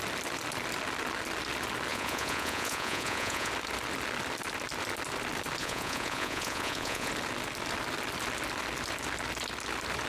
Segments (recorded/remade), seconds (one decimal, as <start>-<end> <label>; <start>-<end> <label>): 0.0-1.9 recorded; 1.9-3.5 remade; 3.5-5.6 recorded; 5.6-7.1 remade; 7.1-10.1 recorded